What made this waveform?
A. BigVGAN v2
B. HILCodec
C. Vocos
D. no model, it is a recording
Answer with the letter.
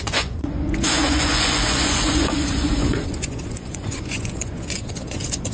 C